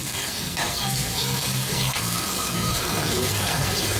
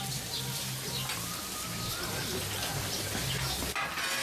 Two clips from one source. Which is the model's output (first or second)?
first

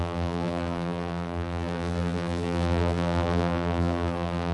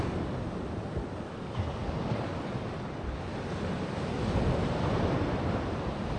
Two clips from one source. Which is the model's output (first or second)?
first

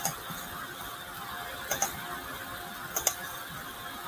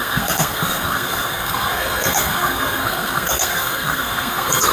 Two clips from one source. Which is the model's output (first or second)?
second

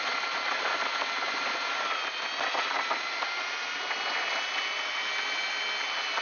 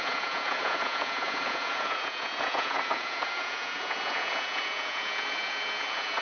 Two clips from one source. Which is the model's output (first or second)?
second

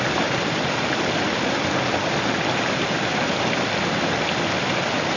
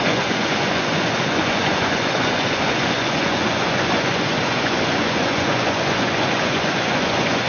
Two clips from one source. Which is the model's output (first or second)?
second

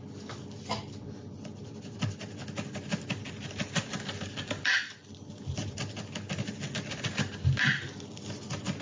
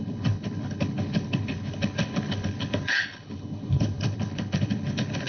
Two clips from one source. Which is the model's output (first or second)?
second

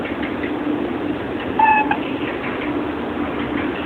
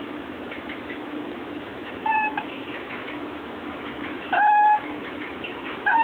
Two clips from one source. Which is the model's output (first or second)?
second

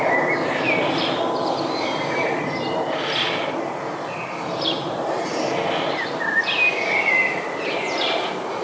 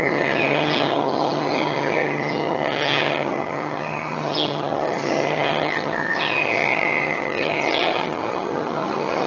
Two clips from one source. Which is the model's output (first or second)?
second